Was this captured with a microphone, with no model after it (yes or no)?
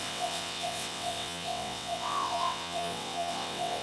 no